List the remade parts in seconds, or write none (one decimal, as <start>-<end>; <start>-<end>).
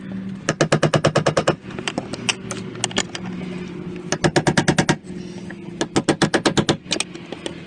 none